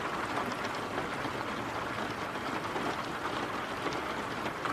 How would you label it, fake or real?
real